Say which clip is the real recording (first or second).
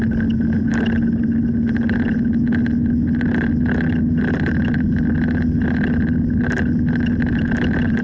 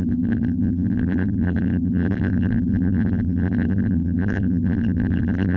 first